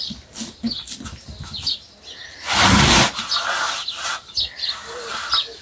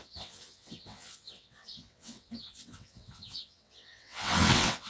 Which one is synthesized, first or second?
second